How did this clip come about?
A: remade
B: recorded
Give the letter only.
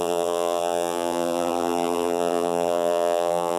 A